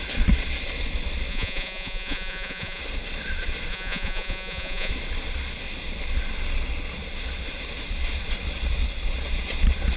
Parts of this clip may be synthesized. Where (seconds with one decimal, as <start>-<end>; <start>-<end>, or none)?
1.3-2.8; 3.7-4.9